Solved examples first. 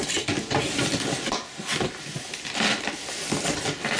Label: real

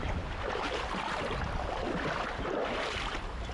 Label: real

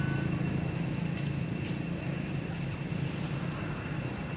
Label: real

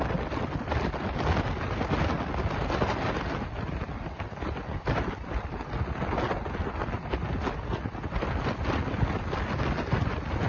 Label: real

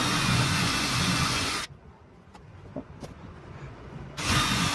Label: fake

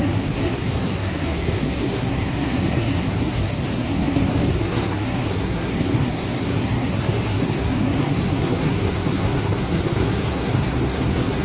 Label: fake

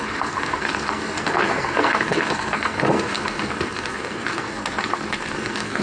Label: fake